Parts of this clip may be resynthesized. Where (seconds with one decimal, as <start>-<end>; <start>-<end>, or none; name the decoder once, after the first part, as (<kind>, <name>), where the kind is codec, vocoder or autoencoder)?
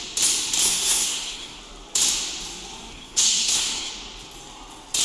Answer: 0.6-1.6 (codec, SNAC); 2.9-3.9